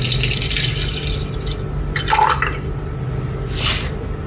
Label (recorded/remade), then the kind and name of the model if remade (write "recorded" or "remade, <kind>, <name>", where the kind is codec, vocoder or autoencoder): recorded